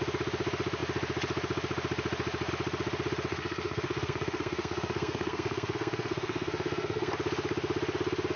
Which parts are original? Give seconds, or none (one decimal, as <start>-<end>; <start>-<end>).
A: 0.0-3.3; 7.1-8.4

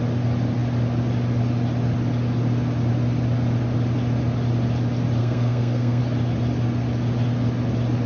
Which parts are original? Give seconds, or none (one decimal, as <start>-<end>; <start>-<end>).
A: 0.0-5.2; 6.0-8.1